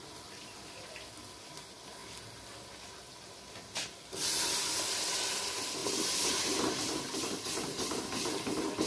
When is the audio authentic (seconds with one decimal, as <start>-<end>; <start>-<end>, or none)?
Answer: 0.0-8.9